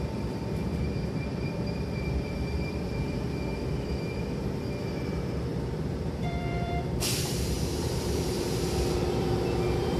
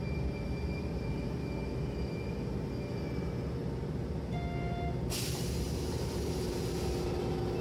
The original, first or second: second